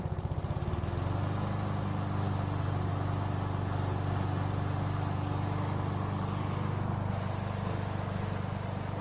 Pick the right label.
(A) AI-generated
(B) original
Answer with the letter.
B